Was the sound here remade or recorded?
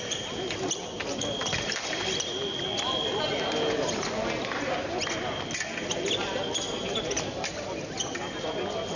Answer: recorded